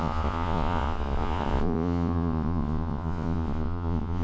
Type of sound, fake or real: fake